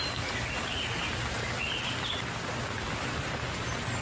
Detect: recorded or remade recorded